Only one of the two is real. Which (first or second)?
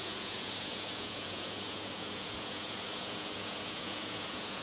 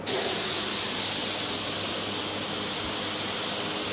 second